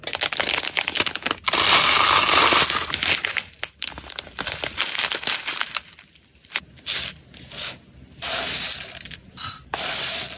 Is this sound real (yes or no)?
yes